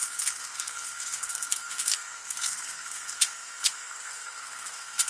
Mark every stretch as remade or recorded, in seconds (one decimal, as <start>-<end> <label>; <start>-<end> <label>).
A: 0.0-5.1 remade